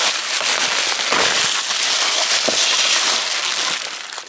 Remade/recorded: recorded